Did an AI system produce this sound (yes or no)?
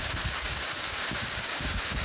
yes